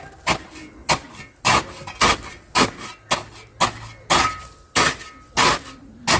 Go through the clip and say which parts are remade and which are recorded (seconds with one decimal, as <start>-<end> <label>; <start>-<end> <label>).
0.0-6.2 recorded